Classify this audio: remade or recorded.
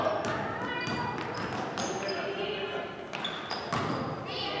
recorded